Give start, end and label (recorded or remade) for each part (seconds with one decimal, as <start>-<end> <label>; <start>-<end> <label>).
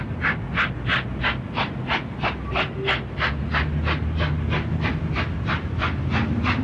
0.0-6.6 recorded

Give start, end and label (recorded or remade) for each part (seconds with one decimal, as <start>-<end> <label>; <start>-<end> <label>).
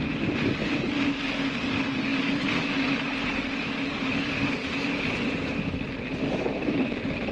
0.0-7.3 recorded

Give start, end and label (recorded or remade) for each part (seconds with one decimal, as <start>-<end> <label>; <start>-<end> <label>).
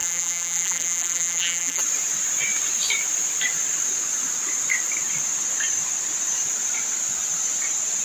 0.0-1.8 remade; 1.8-8.0 recorded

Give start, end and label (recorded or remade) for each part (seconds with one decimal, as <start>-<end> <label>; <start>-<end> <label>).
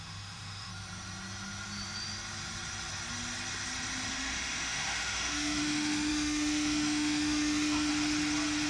0.0-0.7 remade; 0.7-4.1 recorded; 4.1-7.9 remade; 7.9-8.7 recorded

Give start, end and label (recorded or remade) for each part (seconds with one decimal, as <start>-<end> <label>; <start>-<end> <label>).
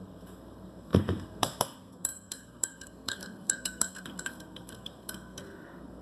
0.0-6.0 remade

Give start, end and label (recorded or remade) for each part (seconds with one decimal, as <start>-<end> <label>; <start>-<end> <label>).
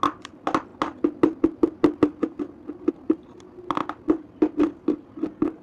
0.0-5.6 recorded